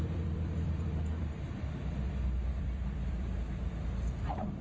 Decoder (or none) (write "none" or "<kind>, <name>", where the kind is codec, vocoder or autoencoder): vocoder, BigVGAN v2